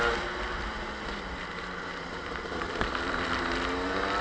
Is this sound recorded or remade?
recorded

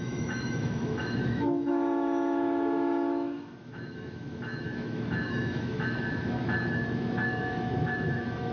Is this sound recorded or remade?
remade